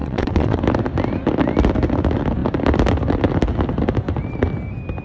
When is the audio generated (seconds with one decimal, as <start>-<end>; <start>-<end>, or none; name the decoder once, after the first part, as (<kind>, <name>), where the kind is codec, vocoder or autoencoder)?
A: 0.0-0.6 (vocoder, WaveNeXt)